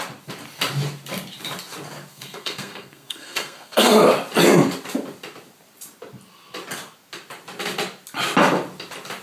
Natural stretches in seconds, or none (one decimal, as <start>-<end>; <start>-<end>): 0.0-2.1; 3.9-9.2